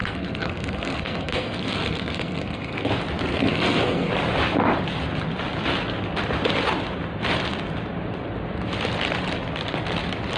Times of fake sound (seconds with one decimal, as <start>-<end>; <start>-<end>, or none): 0.0-2.9; 3.3-4.1